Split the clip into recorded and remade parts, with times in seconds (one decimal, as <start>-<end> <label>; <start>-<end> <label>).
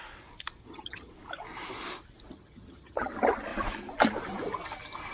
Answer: 0.0-0.6 recorded; 0.6-1.1 remade; 1.1-2.3 recorded; 2.3-3.1 remade; 3.1-5.1 recorded